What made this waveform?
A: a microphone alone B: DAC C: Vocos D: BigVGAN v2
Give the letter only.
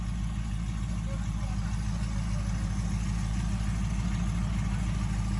A